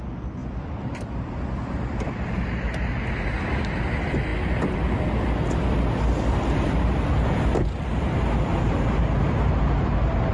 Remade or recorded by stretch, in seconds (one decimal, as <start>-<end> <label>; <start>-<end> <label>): 0.0-0.4 recorded; 0.4-2.4 remade; 2.4-10.3 recorded